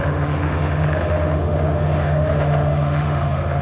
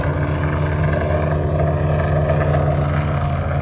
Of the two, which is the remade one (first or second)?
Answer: first